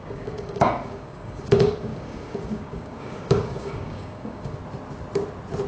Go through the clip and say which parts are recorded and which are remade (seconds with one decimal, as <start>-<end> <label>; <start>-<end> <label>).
0.0-4.6 remade; 4.6-5.7 recorded